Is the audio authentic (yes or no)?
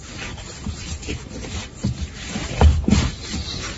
yes